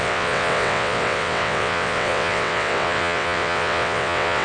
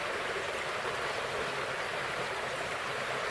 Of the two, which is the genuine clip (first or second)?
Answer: second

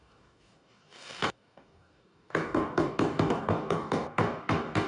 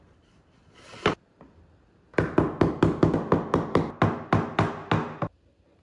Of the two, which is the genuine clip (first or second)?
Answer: second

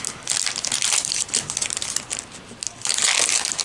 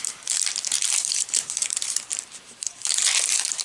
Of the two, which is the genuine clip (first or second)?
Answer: first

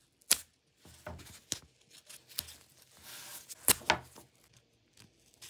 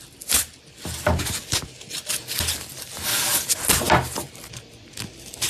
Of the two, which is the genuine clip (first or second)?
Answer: first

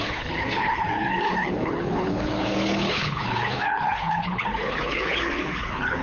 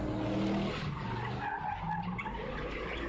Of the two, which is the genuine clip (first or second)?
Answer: second